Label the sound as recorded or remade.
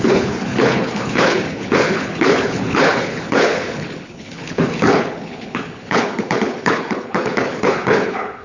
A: remade